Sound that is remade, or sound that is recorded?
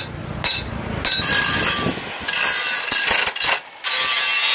recorded